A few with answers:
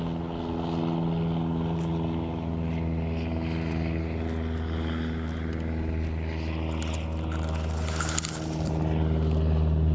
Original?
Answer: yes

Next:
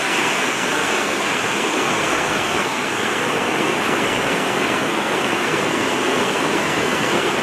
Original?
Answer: no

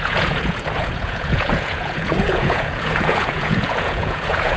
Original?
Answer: no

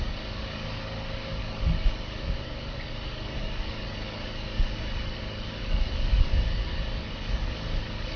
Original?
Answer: no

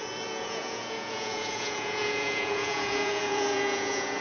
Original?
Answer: no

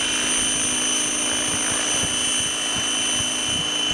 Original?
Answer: yes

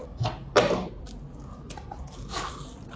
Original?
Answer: yes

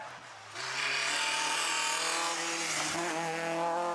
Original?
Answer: yes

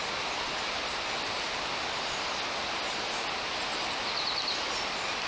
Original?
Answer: yes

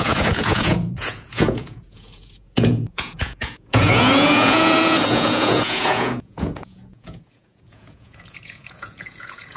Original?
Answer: no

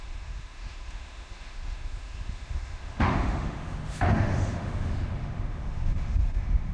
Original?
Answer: no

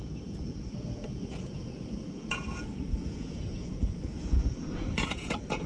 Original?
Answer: no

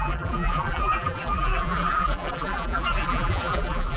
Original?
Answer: no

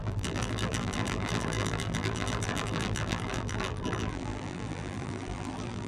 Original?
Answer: no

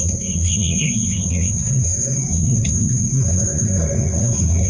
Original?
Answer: no